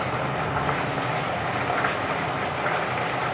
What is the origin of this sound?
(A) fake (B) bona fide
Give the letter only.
B